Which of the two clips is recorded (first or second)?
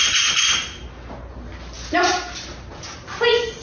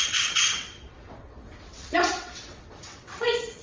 first